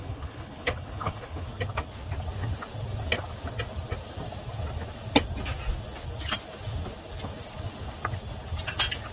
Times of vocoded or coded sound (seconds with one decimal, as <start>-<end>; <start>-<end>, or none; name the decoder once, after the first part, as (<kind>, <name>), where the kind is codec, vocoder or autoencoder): 0.0-1.5 (codec, HILCodec)